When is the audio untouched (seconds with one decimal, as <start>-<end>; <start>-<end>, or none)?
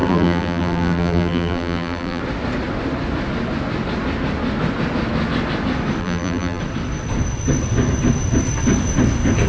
2.2-6.0; 6.6-9.5